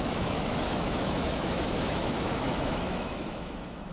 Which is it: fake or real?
fake